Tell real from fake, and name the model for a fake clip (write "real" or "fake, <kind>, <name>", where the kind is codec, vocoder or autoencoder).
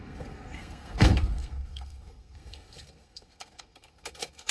fake, codec, SNAC